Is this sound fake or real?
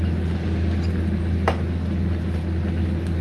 real